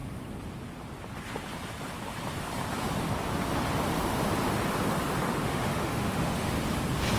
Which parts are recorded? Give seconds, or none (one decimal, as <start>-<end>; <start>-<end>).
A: 0.0-5.5; 6.5-7.2